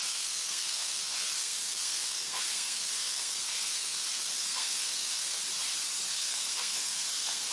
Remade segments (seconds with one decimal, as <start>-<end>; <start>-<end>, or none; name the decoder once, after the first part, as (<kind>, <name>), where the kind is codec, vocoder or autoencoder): 0.0-5.4 (codec, SNAC); 6.1-7.5